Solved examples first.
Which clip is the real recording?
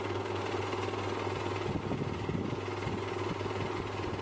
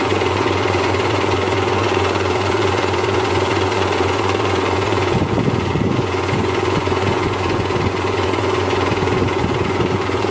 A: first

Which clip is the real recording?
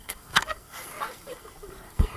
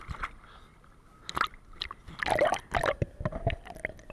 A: second